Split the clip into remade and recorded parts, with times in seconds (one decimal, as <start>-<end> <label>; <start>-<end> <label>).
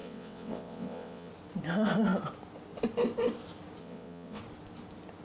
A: 0.0-1.3 remade; 1.3-3.8 recorded; 3.8-4.4 remade; 4.4-5.2 recorded